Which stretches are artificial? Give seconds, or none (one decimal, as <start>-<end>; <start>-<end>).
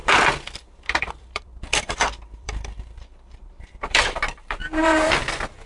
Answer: 0.0-4.6